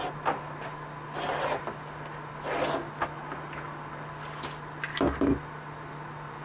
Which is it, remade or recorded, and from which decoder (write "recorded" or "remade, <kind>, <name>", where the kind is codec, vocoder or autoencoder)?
recorded